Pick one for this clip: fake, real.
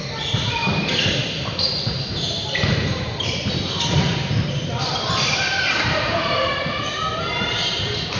fake